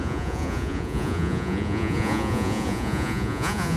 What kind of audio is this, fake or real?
fake